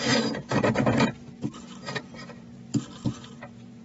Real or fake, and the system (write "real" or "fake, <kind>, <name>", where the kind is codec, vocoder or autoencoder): fake, vocoder, BigVGAN v2